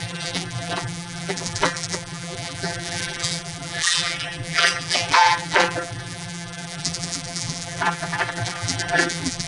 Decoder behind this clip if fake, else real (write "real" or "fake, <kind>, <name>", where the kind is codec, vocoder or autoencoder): fake, vocoder, BigVGAN v2